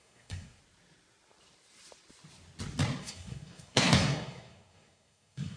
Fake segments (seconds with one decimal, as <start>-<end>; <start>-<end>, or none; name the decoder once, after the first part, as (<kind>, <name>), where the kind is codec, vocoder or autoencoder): 0.0-0.6 (codec, SNAC); 3.0-5.6